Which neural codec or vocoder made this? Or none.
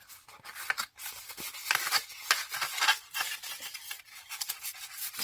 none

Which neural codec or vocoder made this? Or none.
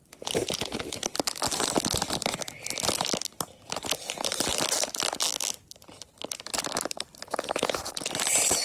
none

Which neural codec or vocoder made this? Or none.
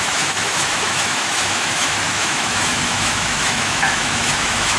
autoencoder, DAC-VAE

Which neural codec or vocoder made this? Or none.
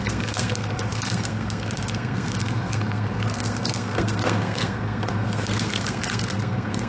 codec, SNAC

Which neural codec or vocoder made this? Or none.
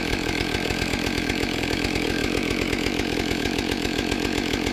autoencoder, DAC-VAE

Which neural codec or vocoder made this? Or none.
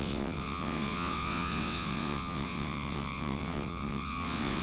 vocoder, WaveNeXt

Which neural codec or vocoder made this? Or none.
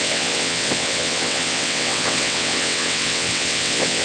vocoder, WaveNeXt